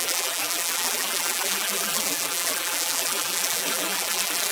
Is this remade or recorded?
remade